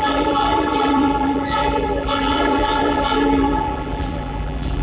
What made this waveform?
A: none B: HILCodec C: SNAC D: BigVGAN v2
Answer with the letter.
D